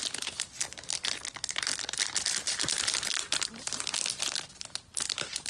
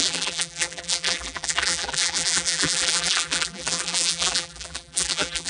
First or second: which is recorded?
first